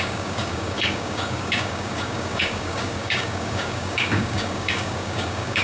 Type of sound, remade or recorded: remade